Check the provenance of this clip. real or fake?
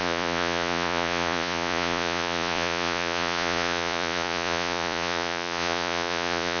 fake